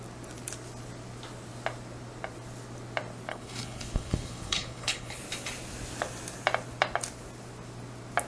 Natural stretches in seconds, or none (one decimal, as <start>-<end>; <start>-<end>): 0.0-3.3; 5.2-8.3